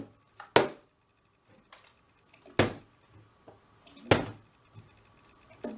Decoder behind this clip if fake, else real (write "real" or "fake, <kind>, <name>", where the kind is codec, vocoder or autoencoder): real